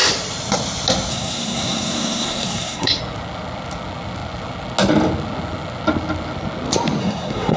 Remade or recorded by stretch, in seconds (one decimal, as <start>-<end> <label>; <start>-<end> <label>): 0.0-1.1 recorded; 1.1-3.0 remade; 3.0-7.0 recorded; 7.0-7.6 remade